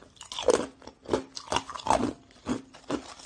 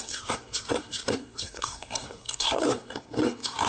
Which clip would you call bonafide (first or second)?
first